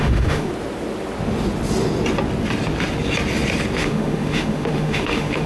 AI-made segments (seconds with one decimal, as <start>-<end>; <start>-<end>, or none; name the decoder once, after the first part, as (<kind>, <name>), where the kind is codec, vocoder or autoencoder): 0.0-0.5 (autoencoder, DAC-VAE); 3.8-5.5